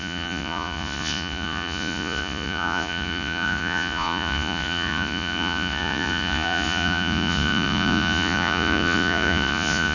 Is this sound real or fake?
fake